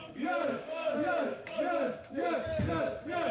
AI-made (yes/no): yes